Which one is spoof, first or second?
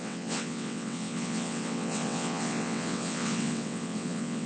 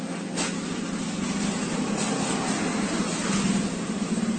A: first